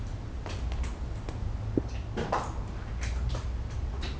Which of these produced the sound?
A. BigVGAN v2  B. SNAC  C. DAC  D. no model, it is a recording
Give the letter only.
D